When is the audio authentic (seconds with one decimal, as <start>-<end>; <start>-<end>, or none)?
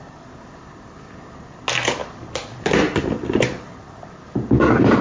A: 0.0-5.0